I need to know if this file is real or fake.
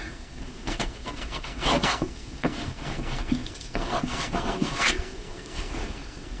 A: fake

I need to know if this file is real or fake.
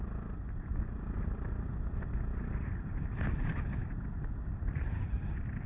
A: real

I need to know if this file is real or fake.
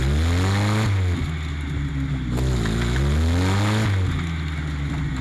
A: real